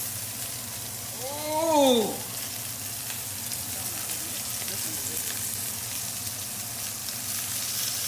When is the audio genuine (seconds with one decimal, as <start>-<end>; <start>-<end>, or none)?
0.0-8.1